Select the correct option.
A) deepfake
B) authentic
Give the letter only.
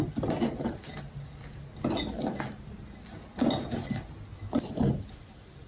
B